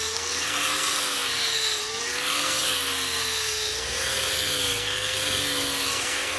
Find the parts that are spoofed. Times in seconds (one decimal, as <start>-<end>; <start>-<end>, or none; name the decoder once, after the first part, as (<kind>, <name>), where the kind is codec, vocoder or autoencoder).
0.0-6.4 (codec, SNAC)